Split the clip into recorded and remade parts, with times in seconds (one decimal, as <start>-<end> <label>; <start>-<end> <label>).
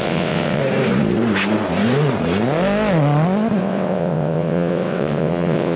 0.0-0.6 remade; 0.6-3.6 recorded; 3.6-5.8 remade